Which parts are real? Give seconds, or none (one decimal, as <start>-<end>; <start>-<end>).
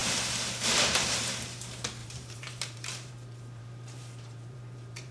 0.0-2.0